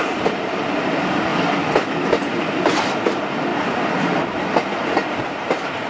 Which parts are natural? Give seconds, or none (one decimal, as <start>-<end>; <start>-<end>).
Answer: 1.3-2.1